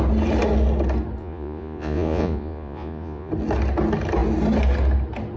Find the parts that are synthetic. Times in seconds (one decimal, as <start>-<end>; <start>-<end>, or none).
1.2-3.3